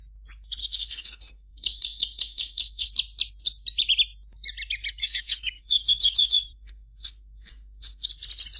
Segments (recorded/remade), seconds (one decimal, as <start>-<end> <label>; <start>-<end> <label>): 0.0-0.6 recorded; 0.6-2.9 remade; 2.9-5.0 recorded; 5.0-8.1 remade; 8.1-8.6 recorded